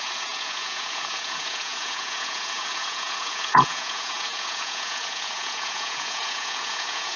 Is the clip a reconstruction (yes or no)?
yes